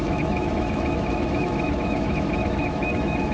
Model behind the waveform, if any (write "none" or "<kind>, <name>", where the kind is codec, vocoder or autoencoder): autoencoder, DAC-VAE